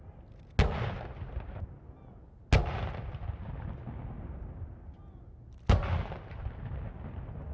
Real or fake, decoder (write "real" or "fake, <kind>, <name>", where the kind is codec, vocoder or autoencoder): real